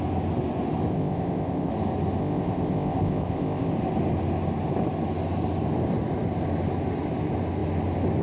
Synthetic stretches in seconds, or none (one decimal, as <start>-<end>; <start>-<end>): 0.9-1.7; 2.2-3.7